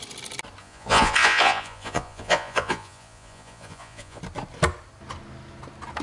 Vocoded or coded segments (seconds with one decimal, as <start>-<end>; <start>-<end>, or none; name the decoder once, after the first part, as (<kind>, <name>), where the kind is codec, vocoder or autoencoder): 0.6-4.2 (vocoder, Vocos)